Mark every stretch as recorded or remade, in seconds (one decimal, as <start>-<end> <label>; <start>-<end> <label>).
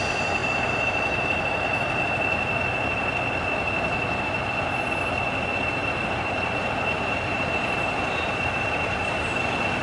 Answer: 0.0-5.8 recorded; 5.8-9.4 remade; 9.4-9.8 recorded